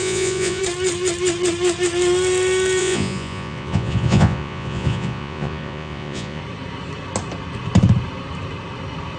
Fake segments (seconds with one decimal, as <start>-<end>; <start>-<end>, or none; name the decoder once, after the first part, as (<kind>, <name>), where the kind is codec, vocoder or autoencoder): 0.0-0.6 (vocoder, Vocos); 2.8-6.4